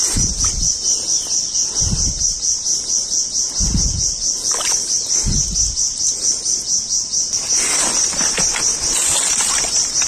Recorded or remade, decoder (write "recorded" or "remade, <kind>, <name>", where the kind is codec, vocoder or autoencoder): recorded